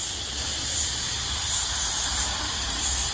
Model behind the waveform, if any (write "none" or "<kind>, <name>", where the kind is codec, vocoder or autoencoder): none